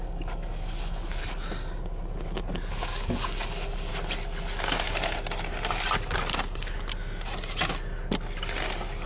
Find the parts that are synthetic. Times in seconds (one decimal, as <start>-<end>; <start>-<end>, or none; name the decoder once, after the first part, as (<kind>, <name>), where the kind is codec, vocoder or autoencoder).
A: 0.0-1.2 (codec, DAC); 2.7-3.9